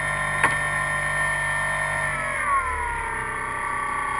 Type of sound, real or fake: real